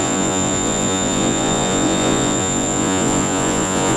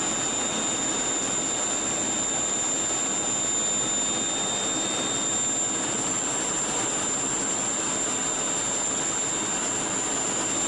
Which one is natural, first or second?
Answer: second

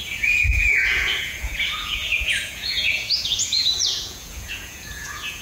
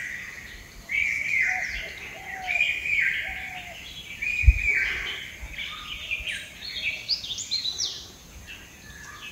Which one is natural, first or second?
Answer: second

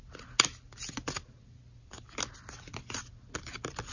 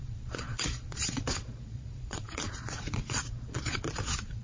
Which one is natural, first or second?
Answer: first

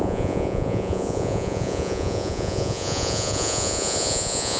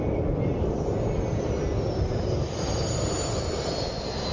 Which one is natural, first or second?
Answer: second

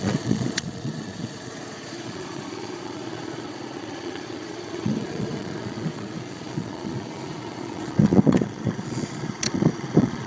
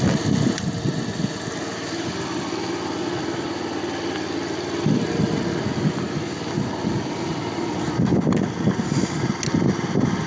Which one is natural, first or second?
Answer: second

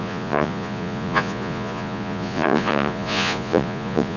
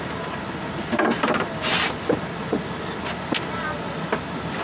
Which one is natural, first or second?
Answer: second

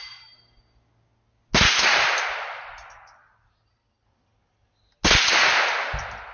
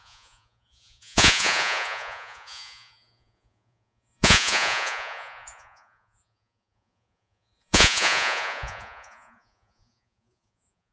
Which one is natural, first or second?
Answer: first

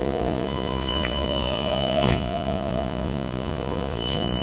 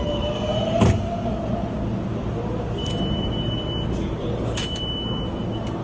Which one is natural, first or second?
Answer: second